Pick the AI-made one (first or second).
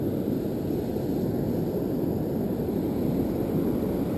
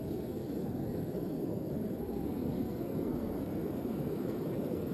second